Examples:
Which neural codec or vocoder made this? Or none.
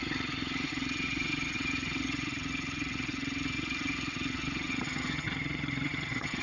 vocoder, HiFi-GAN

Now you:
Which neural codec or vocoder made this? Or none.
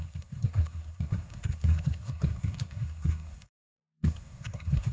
codec, SNAC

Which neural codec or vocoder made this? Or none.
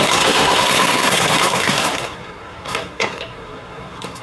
codec, SNAC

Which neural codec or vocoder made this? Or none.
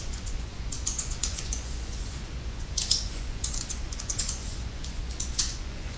vocoder, Vocos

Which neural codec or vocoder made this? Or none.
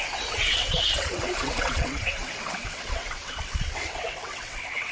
vocoder, WaveNeXt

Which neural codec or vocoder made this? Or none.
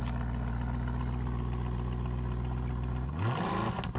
none